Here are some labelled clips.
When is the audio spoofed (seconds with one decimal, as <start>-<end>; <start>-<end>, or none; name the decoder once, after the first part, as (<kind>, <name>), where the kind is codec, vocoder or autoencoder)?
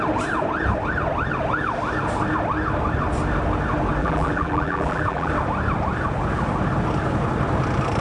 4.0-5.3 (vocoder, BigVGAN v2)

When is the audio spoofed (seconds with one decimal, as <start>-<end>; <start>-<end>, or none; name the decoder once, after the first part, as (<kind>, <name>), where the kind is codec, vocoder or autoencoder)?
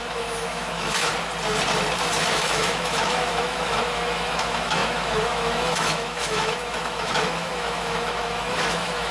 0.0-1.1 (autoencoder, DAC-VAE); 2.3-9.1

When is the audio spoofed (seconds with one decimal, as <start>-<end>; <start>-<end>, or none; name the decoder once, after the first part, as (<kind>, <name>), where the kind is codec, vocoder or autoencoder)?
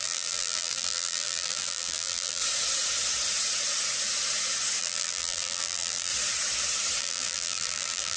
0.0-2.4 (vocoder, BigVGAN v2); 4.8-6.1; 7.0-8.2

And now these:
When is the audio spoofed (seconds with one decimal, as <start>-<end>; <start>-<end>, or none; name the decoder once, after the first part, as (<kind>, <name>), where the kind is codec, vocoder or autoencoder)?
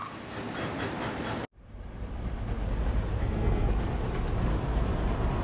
3.2-3.7 (codec, SNAC)